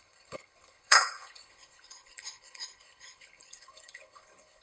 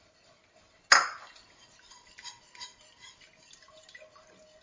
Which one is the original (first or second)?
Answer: second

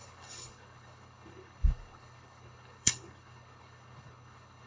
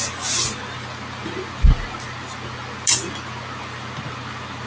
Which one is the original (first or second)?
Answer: second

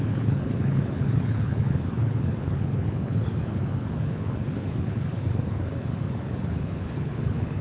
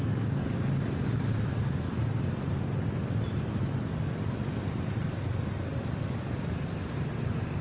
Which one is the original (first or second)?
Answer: second